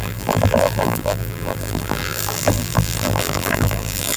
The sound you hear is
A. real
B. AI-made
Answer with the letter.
B